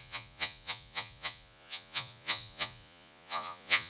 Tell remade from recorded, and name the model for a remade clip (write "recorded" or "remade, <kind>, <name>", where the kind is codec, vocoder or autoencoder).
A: remade, vocoder, Vocos